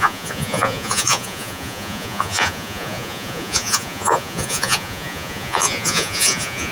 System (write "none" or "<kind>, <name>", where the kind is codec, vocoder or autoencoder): vocoder, Vocos